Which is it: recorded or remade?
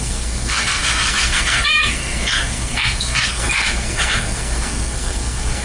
remade